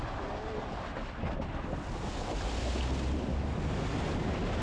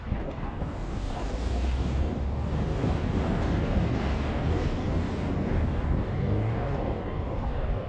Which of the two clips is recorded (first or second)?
first